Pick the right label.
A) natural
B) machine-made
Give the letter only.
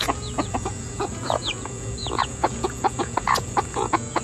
B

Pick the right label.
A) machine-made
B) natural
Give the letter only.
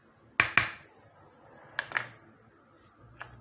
B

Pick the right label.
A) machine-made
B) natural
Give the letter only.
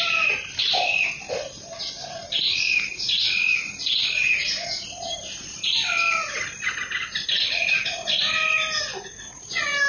B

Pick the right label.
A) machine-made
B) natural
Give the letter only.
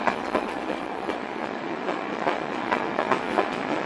A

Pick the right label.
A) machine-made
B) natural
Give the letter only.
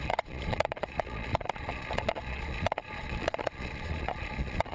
A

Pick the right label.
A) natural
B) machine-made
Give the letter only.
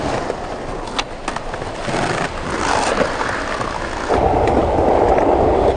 A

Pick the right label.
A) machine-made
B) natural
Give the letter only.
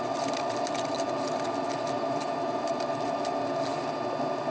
B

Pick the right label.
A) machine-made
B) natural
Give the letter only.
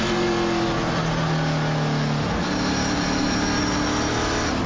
B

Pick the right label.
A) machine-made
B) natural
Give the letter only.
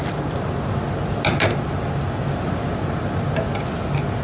B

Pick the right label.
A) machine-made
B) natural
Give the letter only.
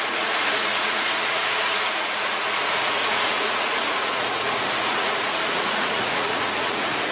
A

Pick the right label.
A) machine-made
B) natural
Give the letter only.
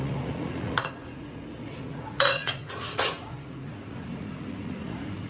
A